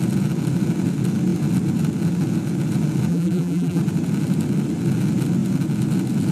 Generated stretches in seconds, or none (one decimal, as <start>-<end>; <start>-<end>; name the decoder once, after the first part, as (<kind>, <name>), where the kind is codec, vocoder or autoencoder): 3.1-3.8 (vocoder, BigVGAN v2)